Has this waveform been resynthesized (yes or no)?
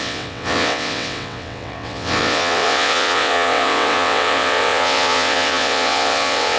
yes